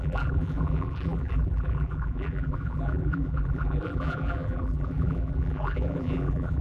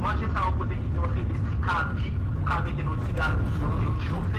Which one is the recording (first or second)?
second